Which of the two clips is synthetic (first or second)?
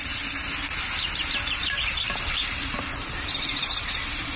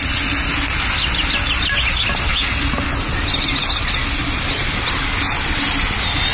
first